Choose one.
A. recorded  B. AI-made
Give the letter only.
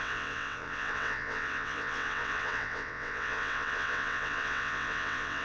B